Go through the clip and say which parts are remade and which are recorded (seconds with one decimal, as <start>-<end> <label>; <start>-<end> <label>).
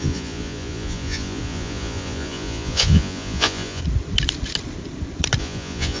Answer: 0.0-3.8 remade; 3.8-5.4 recorded; 5.4-6.0 remade